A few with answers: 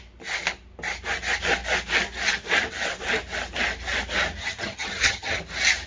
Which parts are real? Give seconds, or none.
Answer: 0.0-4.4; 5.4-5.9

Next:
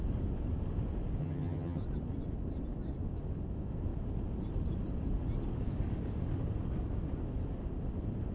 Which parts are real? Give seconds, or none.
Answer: 0.0-1.2; 1.8-8.3

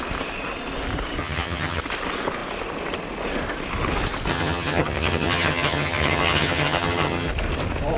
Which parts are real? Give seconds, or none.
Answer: 0.0-1.2; 1.8-4.3; 7.3-8.0

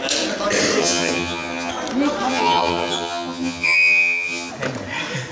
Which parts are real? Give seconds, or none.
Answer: 0.0-0.8; 1.7-2.3; 4.5-5.3